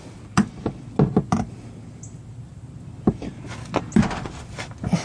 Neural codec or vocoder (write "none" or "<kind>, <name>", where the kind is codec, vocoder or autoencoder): none